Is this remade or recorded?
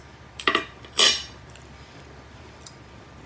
remade